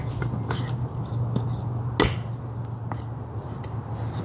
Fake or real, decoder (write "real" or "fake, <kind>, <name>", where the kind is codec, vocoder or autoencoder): real